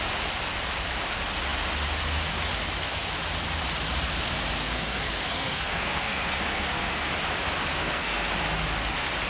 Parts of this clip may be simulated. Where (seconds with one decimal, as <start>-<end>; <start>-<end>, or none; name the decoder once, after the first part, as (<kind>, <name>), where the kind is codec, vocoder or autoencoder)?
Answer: 4.6-7.1 (codec, SNAC); 7.7-8.3